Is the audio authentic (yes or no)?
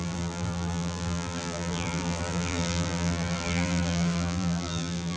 no